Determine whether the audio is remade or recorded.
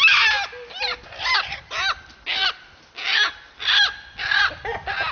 recorded